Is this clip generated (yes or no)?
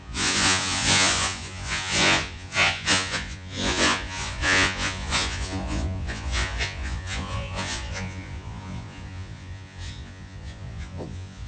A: yes